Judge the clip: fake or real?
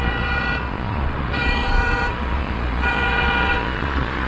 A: fake